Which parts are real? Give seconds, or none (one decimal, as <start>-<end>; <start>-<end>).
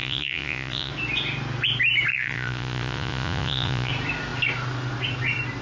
0.9-2.1; 3.9-5.6